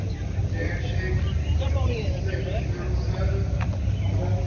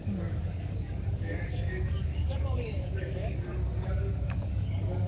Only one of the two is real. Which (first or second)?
first